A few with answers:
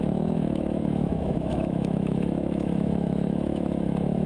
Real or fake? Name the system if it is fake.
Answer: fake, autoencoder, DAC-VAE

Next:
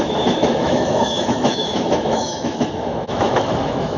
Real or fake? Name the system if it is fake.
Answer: fake, autoencoder, DAC-VAE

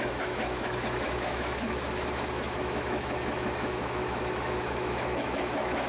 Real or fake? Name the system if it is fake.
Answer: fake, autoencoder, DAC-VAE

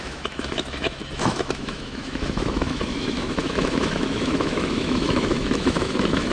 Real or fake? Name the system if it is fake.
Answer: fake, autoencoder, DAC-VAE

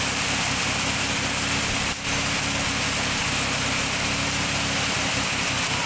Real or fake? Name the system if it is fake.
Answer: real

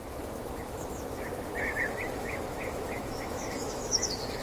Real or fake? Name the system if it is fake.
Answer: fake, autoencoder, DAC-VAE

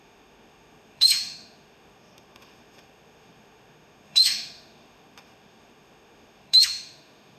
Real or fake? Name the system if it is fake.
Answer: fake, autoencoder, DAC-VAE